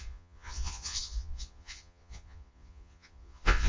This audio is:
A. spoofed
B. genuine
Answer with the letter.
A